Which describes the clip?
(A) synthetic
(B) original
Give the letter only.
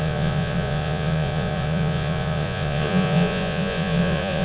A